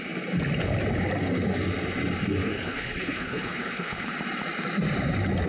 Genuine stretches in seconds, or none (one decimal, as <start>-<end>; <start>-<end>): 0.0-2.4; 4.1-5.5

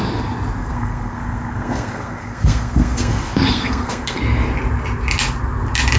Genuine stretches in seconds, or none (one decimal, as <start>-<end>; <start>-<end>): 0.0-0.6; 4.2-6.0

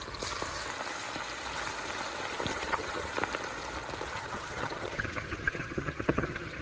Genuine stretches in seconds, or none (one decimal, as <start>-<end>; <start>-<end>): 0.0-2.5; 3.1-4.1

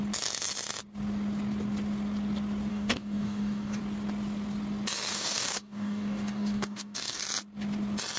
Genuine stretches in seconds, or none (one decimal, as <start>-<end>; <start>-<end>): 0.0-2.7; 3.8-5.1; 7.2-8.2

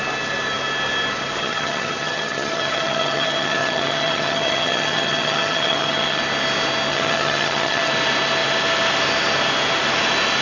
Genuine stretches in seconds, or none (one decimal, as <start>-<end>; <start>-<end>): 0.0-1.4; 6.2-6.9; 7.9-10.4

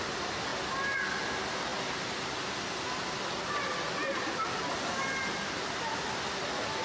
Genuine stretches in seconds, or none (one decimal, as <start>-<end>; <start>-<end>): 0.0-6.8

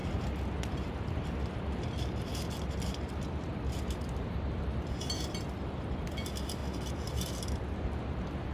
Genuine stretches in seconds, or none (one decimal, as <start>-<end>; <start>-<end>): 0.0-1.1; 6.6-7.1